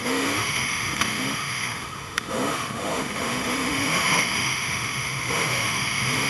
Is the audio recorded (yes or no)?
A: no